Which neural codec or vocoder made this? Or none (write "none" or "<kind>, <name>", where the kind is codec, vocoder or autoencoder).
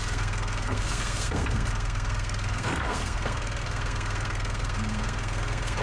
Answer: codec, SNAC